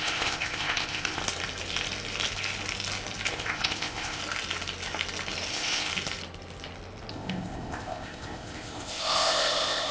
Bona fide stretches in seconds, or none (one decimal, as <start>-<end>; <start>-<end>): 1.2-3.3; 4.2-5.5; 5.9-7.1